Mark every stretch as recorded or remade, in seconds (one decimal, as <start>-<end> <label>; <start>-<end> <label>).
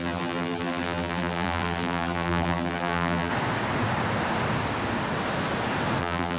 0.0-3.3 remade; 3.3-6.0 recorded; 6.0-6.4 remade